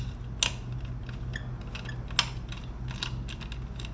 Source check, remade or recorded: recorded